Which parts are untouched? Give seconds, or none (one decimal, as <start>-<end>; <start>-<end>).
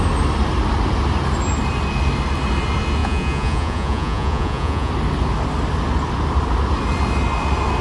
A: 0.0-3.0; 4.9-7.8